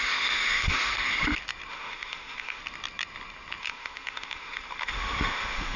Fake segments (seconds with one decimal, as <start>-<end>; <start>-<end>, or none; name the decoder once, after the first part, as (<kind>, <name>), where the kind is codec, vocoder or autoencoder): 0.0-0.9 (autoencoder, DAC-VAE); 1.7-2.6; 3.6-5.8